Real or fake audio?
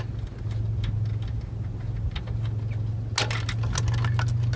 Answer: real